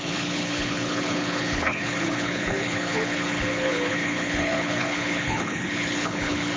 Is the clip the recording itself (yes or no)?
no